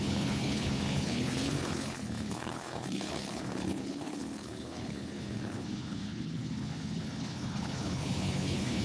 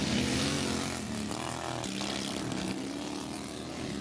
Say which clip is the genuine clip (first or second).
second